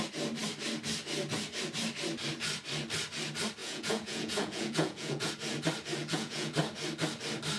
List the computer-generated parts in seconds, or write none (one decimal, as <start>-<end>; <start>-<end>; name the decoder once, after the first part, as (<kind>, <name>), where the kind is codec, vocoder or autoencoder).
3.6-5.3 (vocoder, Vocos); 6.0-6.6